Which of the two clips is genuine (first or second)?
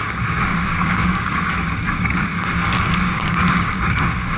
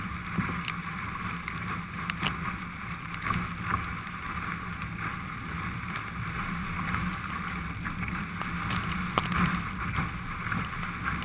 second